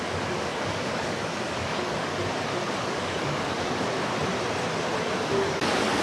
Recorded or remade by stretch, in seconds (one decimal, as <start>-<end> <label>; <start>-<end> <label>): 0.0-2.1 remade; 2.1-2.8 recorded; 2.8-4.1 remade; 4.1-5.0 recorded; 5.0-6.0 remade